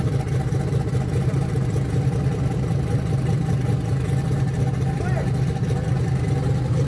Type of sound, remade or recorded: recorded